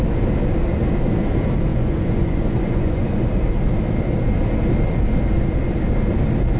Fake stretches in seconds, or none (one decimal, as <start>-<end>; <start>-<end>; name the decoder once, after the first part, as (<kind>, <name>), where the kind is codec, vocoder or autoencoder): 1.7-3.2 (vocoder, Vocos)